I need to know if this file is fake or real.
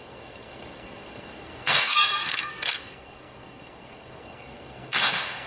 fake